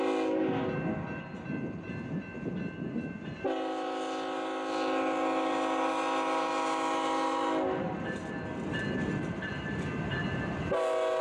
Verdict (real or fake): real